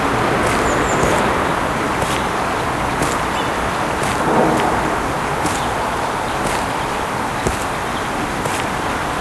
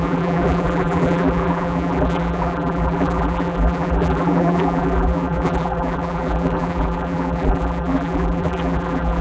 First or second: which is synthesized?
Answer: second